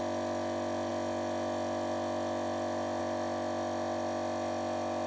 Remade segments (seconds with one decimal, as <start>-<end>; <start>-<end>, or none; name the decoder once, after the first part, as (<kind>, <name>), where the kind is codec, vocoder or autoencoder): none